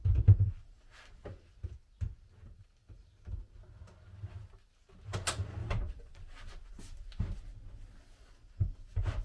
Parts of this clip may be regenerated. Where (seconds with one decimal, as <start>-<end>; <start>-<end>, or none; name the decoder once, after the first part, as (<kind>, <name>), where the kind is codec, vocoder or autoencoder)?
5.6-6.5 (vocoder, BigVGAN v2)